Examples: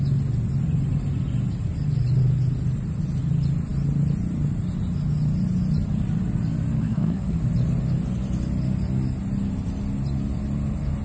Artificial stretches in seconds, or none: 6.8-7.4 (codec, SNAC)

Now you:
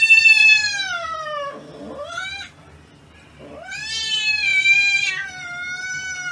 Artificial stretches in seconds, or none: none